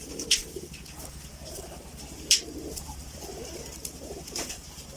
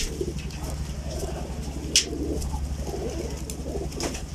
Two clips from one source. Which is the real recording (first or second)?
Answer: second